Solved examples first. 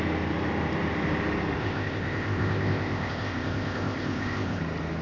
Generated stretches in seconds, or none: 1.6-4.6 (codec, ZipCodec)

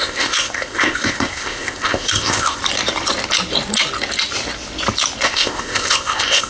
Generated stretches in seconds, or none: 0.0-2.6 (codec, ZipCodec); 5.2-6.5

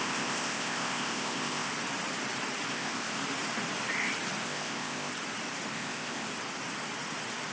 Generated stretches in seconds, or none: 0.0-1.7 (codec, ZipCodec); 2.7-3.2; 4.4-5.1; 5.7-6.3